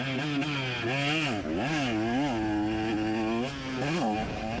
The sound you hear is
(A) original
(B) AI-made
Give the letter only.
A